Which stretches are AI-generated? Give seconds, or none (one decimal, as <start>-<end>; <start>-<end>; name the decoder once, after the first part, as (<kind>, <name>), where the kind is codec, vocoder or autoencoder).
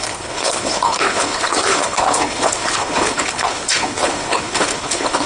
0.0-5.3 (codec, HILCodec)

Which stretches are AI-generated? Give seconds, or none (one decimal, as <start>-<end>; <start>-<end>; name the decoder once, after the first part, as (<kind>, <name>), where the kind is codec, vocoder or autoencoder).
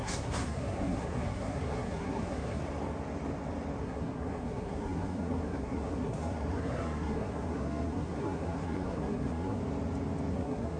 0.0-2.6 (codec, SNAC); 3.8-9.6; 10.3-10.8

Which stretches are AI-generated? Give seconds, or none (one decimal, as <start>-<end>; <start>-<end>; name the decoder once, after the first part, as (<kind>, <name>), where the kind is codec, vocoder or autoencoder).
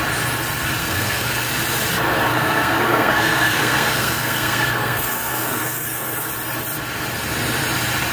0.8-1.5 (codec, SNAC); 2.3-6.3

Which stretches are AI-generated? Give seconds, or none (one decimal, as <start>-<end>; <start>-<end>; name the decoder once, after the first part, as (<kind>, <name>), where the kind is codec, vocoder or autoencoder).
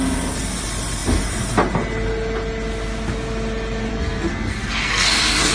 3.9-5.5 (codec, SNAC)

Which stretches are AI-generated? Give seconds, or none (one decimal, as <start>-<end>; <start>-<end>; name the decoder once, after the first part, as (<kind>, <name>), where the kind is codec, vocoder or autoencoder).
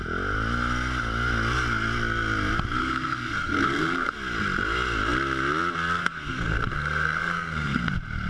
2.8-4.1 (codec, SNAC); 6.0-7.9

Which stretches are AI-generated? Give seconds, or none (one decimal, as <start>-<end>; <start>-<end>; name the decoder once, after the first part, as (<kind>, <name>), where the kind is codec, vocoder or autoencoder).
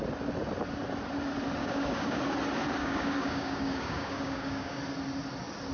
1.6-2.2 (codec, DAC); 2.8-4.8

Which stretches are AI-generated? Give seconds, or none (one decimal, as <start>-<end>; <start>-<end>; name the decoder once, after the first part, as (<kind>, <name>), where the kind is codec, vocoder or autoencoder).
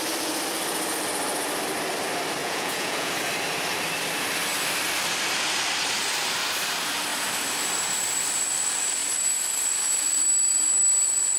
2.4-3.1 (vocoder, Vocos)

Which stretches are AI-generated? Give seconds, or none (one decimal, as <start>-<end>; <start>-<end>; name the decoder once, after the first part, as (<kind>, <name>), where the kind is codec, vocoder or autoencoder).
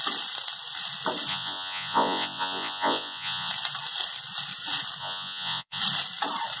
1.3-3.5 (vocoder, Vocos); 5.0-5.8